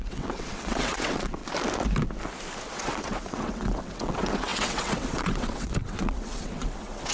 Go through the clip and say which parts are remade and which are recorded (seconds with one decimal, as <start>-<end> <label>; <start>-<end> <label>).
0.0-1.4 remade; 1.4-2.7 recorded; 2.7-7.1 remade